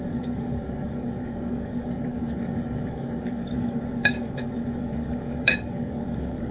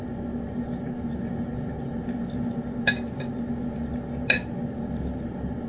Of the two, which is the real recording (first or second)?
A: second